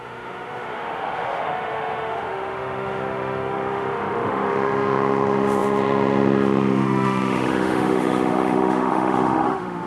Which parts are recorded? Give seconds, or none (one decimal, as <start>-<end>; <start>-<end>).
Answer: none